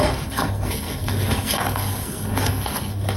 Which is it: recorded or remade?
remade